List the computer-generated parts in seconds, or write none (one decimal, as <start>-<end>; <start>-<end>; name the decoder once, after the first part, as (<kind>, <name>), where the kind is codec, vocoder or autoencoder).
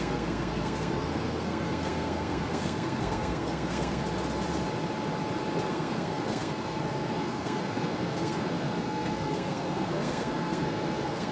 0.0-4.0 (codec, SNAC); 5.7-11.3